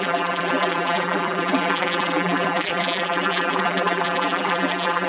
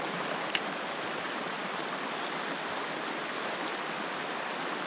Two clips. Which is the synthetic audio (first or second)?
first